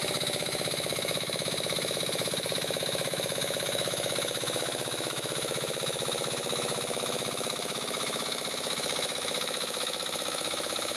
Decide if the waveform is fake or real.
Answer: fake